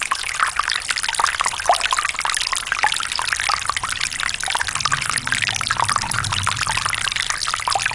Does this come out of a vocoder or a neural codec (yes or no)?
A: no